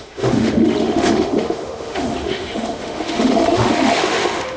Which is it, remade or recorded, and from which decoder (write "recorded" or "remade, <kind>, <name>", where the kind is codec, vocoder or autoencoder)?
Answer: remade, autoencoder, DAC-VAE